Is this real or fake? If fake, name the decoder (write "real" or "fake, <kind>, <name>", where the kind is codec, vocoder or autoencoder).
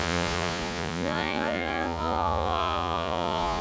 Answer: fake, vocoder, Vocos